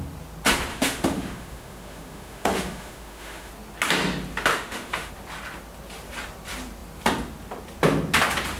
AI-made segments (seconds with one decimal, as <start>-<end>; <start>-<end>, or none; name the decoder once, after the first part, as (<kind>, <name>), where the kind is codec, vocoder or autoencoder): 0.7-3.5 (autoencoder, DAC-VAE); 4.5-5.1